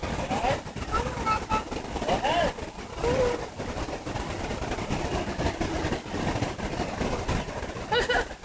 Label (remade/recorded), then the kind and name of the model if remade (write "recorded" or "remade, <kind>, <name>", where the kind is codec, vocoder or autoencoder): recorded